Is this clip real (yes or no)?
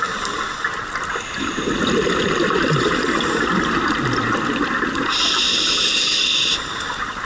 yes